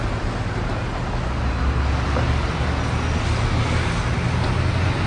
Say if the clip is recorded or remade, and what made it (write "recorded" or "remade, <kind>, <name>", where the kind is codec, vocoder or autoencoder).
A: recorded